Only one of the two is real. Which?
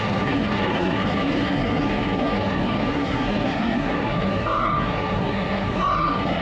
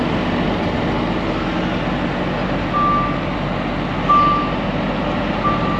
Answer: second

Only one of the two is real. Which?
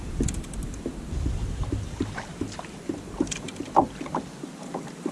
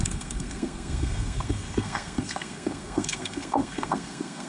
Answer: first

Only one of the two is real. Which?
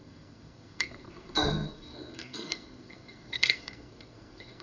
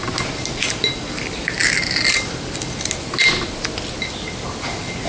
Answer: second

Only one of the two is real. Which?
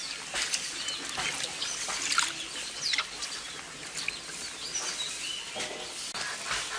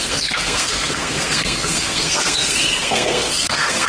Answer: first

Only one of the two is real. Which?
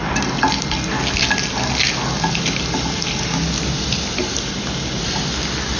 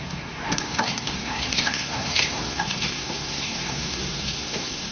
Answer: first